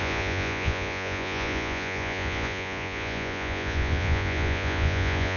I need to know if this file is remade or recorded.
remade